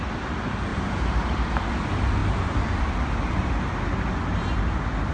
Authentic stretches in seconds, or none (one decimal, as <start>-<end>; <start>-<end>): 0.0-0.7; 1.7-2.2; 2.9-5.1